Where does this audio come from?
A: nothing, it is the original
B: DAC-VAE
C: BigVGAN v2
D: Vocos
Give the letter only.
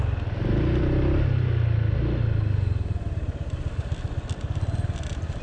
A